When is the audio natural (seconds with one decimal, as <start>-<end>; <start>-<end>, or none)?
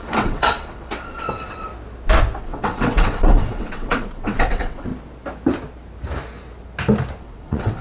1.7-2.4; 4.9-7.2